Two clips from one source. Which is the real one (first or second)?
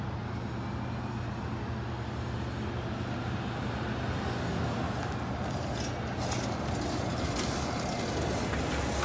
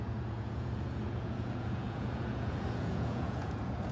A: first